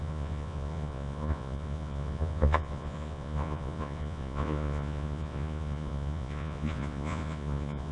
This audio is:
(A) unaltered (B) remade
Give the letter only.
B